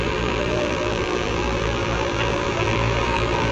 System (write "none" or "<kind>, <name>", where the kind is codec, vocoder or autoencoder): vocoder, BigVGAN v2